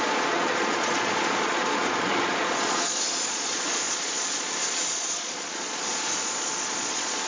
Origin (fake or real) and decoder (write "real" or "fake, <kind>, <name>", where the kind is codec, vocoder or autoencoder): fake, vocoder, Vocos